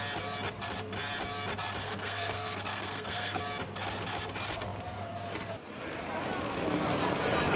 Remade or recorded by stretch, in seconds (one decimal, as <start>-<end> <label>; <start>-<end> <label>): 0.0-1.8 recorded; 1.8-3.4 remade; 3.4-7.6 recorded